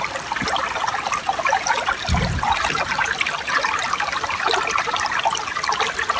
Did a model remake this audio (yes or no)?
no